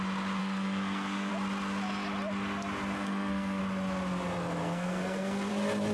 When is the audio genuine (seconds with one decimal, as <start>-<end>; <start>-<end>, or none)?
0.0-0.4; 1.3-3.0; 3.6-4.6; 5.5-5.9